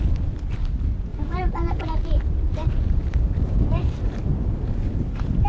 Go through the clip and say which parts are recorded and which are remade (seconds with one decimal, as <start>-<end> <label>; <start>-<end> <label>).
0.0-1.1 recorded; 1.1-4.2 remade; 4.2-5.5 recorded